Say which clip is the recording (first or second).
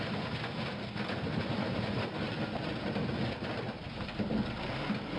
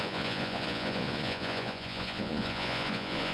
first